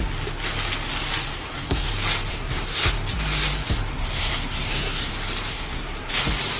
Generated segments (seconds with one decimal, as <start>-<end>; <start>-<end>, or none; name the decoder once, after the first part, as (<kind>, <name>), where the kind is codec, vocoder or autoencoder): 1.3-1.9 (codec, SNAC); 2.3-2.9; 3.9-5.1; 5.5-6.1